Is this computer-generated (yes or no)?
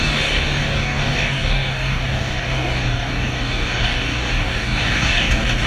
yes